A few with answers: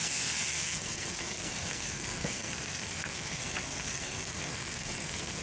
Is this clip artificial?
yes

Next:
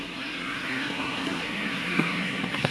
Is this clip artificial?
yes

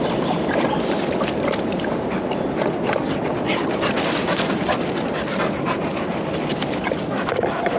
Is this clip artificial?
no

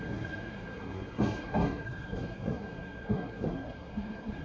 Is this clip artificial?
yes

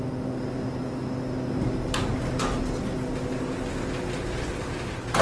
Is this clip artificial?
no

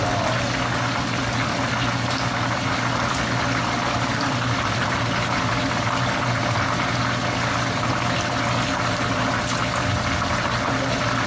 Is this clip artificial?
no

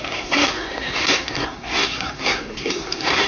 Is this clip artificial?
yes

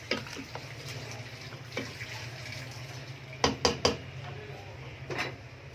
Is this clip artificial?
no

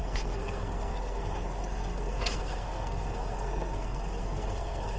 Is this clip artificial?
yes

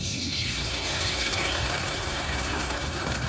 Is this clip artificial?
yes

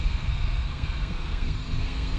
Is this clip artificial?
yes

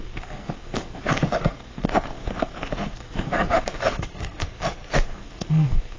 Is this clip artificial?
yes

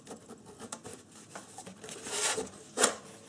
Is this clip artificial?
no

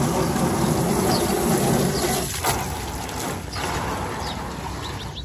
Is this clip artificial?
no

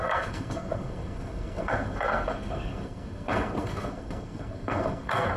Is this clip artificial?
yes